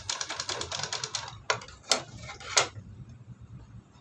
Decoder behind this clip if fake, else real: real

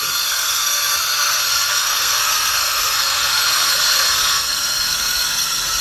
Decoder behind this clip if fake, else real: fake, codec, SNAC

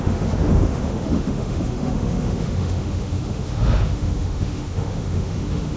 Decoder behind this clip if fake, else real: fake, autoencoder, DAC-VAE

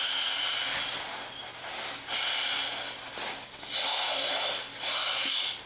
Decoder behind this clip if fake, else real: real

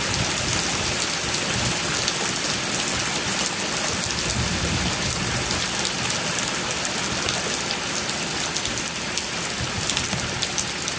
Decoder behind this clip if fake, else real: real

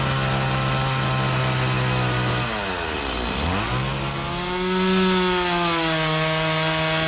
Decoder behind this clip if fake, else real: real